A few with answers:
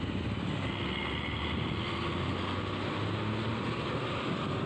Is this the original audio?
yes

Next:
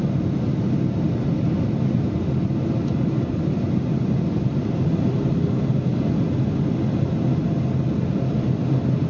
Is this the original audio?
yes